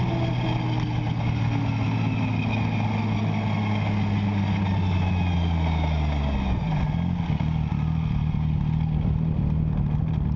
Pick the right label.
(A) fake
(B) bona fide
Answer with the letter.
B